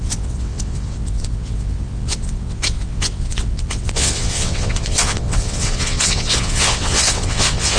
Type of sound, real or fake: fake